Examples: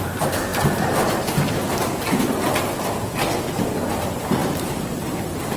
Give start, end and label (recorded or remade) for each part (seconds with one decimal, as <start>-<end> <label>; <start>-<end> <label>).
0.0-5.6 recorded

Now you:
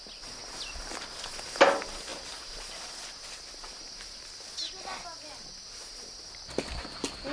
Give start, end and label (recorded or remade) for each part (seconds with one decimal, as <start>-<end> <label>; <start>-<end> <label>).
0.0-7.3 recorded

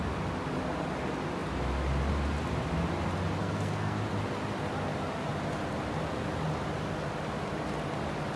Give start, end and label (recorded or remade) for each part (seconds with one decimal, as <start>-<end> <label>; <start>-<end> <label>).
0.0-3.4 recorded; 3.4-4.0 remade; 4.0-8.4 recorded

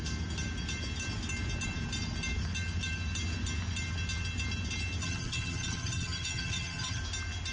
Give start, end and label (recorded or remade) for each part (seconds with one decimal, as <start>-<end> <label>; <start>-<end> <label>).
0.0-5.0 recorded; 5.0-7.0 remade; 7.0-7.5 recorded

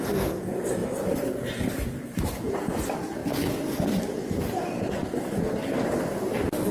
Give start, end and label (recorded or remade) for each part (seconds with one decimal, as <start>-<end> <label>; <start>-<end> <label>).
0.0-0.8 recorded; 0.8-2.5 remade; 2.5-6.7 recorded

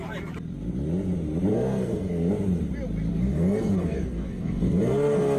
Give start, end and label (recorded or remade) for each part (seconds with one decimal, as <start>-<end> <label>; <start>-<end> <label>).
0.0-1.5 recorded; 1.5-2.3 remade; 2.3-3.1 recorded; 3.1-5.4 remade